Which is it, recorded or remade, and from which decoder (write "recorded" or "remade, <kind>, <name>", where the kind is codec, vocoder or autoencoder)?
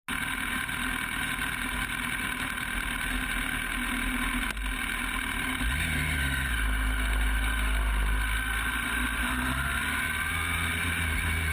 recorded